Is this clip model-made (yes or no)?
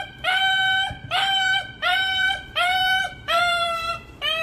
yes